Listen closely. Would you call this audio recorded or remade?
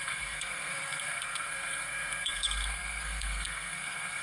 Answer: remade